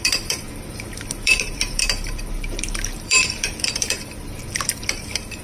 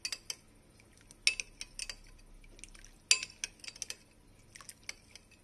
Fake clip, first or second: first